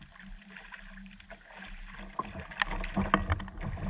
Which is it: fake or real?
real